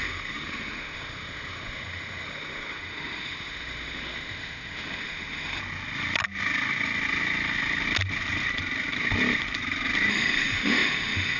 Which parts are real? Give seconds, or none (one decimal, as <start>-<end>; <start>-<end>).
5.6-10.1